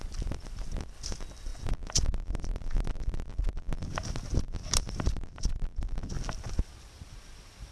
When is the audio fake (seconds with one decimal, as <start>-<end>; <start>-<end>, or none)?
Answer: none